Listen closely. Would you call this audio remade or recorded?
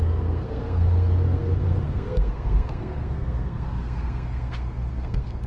remade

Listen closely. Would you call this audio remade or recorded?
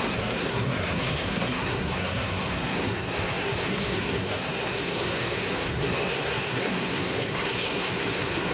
remade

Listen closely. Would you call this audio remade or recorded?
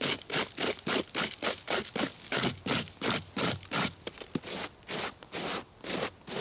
recorded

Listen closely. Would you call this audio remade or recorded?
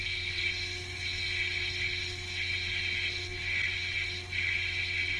recorded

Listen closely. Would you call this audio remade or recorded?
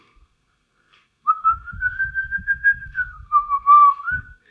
remade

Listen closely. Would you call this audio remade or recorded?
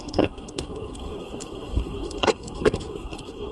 remade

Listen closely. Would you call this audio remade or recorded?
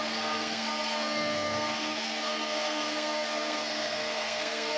remade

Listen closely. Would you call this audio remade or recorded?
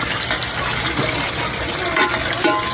recorded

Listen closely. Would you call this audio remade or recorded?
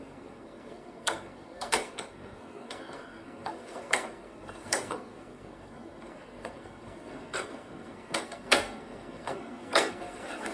remade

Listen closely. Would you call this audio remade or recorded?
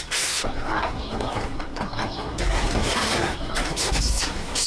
remade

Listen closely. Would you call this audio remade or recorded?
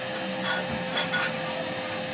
recorded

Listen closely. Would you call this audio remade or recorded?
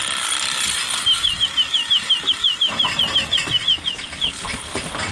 recorded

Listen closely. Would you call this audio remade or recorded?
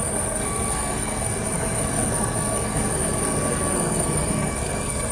remade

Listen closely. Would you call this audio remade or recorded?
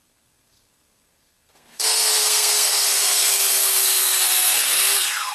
remade